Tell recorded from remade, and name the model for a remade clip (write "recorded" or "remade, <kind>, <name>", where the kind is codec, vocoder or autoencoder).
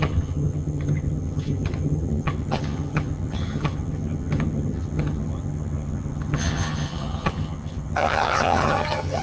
remade, vocoder, HiFi-GAN